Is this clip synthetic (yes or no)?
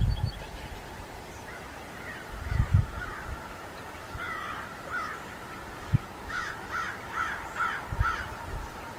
yes